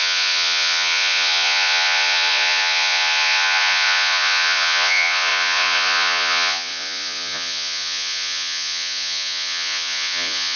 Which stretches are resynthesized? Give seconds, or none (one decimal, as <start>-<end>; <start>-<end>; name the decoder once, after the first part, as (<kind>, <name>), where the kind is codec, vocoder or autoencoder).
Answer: 0.0-10.6 (vocoder, Vocos)